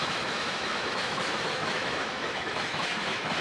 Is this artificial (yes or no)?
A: yes